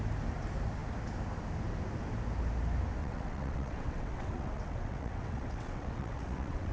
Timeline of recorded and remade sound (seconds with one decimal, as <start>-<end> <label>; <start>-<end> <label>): 0.0-3.0 recorded; 3.0-6.7 remade